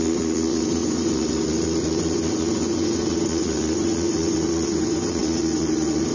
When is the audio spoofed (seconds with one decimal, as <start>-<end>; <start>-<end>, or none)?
0.0-6.1